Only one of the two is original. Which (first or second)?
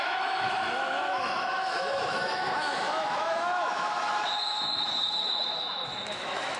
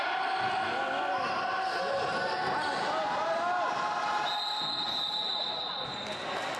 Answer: second